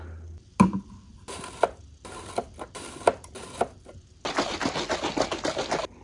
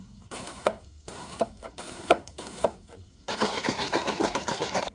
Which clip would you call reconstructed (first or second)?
second